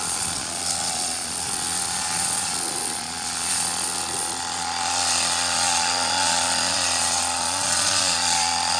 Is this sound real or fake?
fake